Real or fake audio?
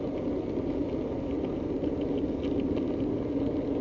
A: real